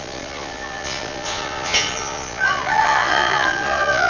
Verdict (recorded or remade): remade